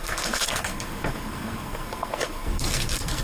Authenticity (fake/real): fake